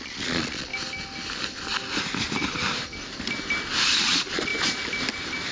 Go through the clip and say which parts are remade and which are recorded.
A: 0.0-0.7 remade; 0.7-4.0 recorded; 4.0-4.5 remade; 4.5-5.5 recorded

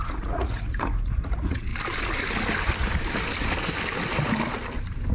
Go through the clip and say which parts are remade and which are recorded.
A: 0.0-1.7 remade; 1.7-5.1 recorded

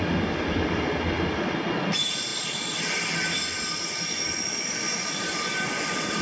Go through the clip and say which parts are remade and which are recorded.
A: 0.0-6.2 recorded

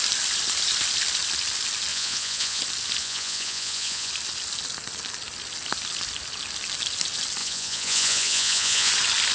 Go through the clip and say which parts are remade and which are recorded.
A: 0.0-1.9 recorded; 1.9-2.6 remade; 2.6-3.0 recorded; 3.0-4.1 remade; 4.1-7.4 recorded; 7.4-8.9 remade; 8.9-9.3 recorded